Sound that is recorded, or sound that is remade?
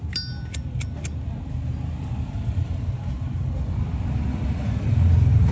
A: recorded